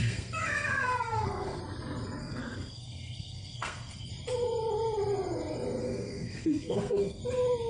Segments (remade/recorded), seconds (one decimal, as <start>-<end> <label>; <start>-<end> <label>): 0.0-1.6 remade; 1.6-2.2 recorded; 2.2-4.1 remade; 4.1-5.8 recorded; 5.8-7.2 remade; 7.2-7.7 recorded